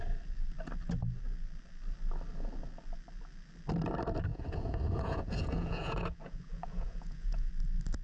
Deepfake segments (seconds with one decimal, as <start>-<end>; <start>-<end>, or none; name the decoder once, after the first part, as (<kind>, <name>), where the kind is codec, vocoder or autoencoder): 4.3-7.5 (vocoder, Vocos)